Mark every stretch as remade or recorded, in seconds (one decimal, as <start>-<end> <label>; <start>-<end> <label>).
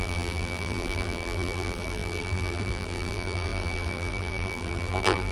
0.0-5.3 remade